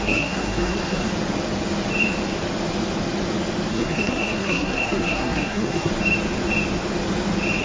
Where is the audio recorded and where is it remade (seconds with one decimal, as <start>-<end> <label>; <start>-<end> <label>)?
0.0-1.1 remade; 1.1-3.7 recorded; 3.7-5.9 remade; 5.9-7.6 recorded